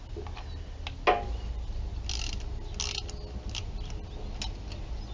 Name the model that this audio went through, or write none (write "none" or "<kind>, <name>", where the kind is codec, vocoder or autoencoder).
none